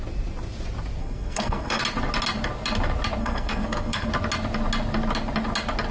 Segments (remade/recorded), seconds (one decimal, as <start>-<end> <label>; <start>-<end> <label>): 0.0-1.0 recorded; 1.0-1.8 remade; 1.8-3.2 recorded; 3.2-4.1 remade; 4.1-5.9 recorded

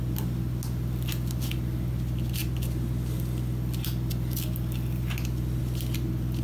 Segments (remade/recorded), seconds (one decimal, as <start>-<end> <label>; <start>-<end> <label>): 0.0-6.4 recorded

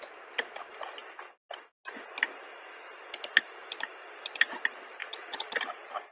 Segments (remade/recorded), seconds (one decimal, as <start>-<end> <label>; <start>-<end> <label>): 0.0-5.0 recorded; 5.0-5.6 remade; 5.6-6.1 recorded